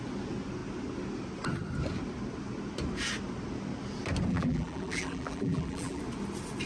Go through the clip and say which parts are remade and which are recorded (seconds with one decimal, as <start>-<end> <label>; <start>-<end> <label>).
0.0-4.3 recorded; 4.3-6.0 remade; 6.0-6.7 recorded